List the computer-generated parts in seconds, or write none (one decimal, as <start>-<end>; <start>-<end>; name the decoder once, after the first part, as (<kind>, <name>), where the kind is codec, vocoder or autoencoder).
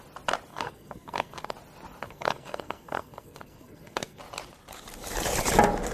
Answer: 0.5-1.5 (codec, SNAC); 2.0-4.2